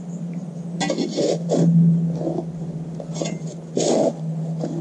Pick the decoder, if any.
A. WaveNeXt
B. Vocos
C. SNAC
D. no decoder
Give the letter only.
D